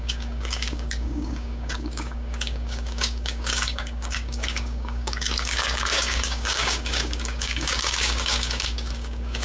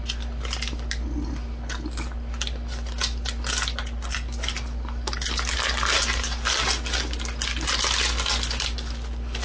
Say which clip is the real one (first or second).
second